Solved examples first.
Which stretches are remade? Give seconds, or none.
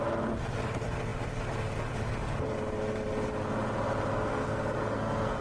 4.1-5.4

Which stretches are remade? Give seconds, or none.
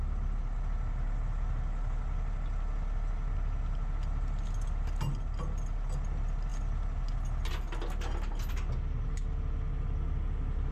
none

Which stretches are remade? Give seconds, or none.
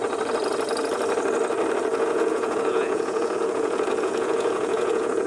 1.9-5.3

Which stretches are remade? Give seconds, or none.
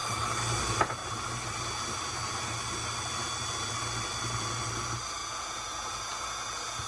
5.2-6.9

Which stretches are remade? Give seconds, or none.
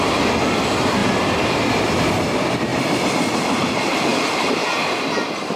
none